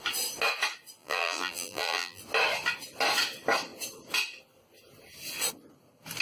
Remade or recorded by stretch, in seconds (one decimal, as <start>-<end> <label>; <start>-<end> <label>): 0.0-1.0 recorded; 1.0-2.2 remade; 2.2-6.2 recorded